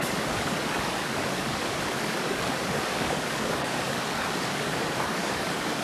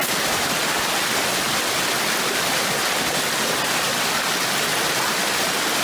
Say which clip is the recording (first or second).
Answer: second